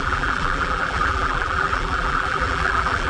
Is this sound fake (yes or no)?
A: yes